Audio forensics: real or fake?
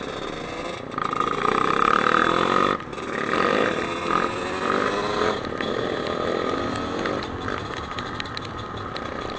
real